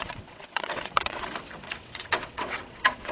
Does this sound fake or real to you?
fake